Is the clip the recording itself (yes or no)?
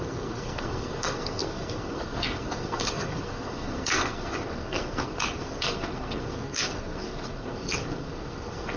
no